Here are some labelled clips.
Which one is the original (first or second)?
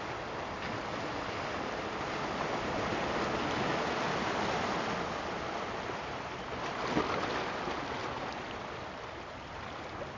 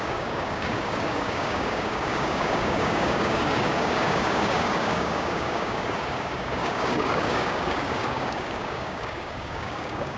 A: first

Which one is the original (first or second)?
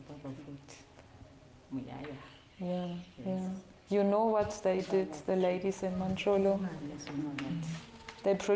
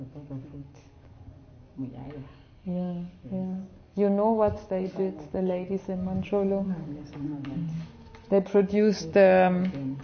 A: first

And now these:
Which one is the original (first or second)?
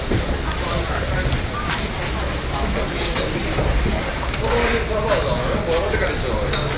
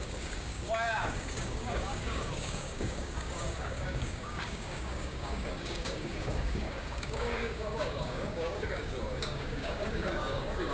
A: first